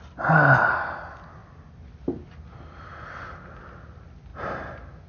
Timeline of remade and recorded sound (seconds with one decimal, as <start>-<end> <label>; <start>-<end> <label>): 0.0-5.1 recorded